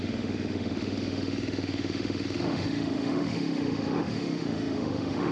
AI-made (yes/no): yes